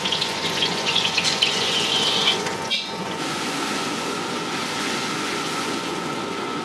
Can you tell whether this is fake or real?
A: fake